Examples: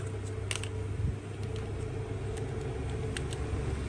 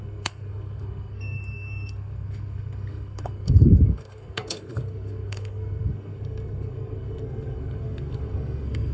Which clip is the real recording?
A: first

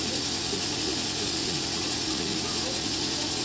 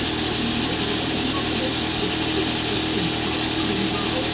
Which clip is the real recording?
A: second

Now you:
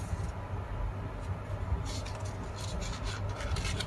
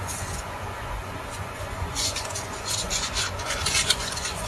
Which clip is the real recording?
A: first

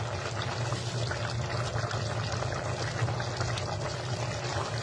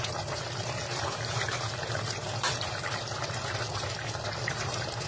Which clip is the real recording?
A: first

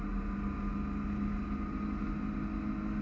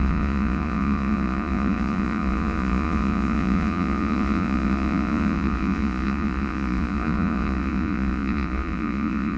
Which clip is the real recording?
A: first